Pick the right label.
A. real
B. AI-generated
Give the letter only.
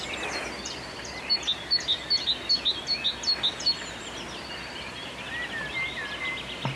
A